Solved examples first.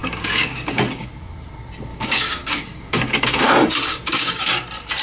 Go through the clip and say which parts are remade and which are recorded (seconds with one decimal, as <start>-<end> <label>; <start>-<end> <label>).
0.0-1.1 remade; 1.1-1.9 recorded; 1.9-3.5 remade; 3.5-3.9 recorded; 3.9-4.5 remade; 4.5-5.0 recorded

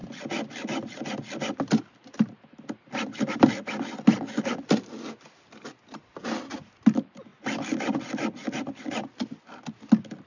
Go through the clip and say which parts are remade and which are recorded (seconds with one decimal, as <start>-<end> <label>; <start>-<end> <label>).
0.0-10.3 recorded

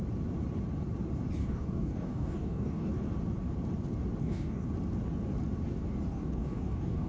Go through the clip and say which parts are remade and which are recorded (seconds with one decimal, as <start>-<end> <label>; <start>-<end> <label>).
0.0-1.4 recorded; 1.4-2.9 remade; 2.9-4.2 recorded; 4.2-4.7 remade; 4.7-6.1 recorded; 6.1-7.1 remade

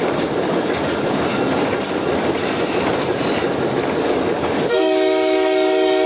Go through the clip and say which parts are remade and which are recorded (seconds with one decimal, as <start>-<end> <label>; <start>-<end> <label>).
0.0-1.3 remade; 1.3-4.1 recorded; 4.1-6.1 remade

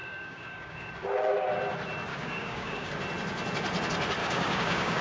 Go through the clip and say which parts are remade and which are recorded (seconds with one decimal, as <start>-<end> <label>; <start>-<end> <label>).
0.0-0.9 remade; 0.9-2.1 recorded; 2.1-2.9 remade; 2.9-4.2 recorded; 4.2-5.0 remade